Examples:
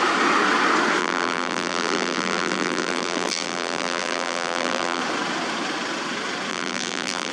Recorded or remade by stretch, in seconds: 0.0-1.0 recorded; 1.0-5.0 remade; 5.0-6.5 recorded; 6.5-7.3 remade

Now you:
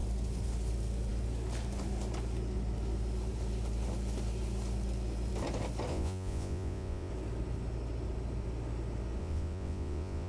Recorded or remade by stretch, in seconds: 0.0-5.9 recorded; 5.9-7.1 remade; 7.1-9.2 recorded; 9.2-10.3 remade